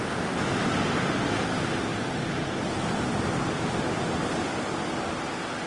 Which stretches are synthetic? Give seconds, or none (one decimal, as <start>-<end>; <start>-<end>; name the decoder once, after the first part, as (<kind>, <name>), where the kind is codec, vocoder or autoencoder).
none